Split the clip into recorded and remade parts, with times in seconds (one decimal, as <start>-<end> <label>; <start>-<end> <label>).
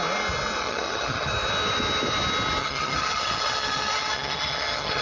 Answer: 0.0-0.6 recorded; 0.6-1.3 remade; 1.3-2.6 recorded; 2.6-5.0 remade